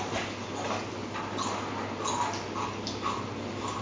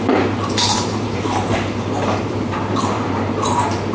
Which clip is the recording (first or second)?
first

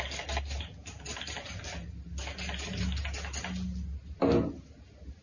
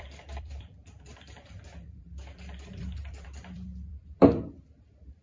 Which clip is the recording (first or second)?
first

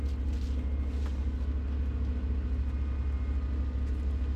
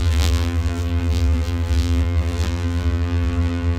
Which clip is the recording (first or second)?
first